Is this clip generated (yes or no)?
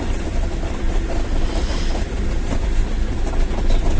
no